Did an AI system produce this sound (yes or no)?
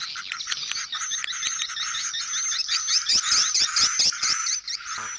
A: no